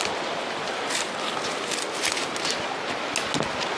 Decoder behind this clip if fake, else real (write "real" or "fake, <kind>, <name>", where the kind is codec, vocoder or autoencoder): real